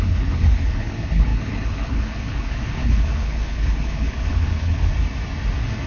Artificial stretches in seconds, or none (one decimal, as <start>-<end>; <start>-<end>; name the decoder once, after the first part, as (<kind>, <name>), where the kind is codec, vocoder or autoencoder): 0.0-4.9 (codec, HILCodec)